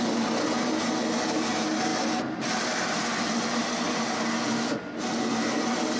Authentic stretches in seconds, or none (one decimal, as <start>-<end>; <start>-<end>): 0.0-6.0